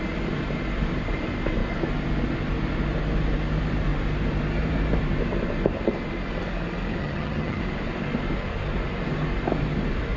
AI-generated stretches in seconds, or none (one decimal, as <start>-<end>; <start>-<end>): 7.0-7.6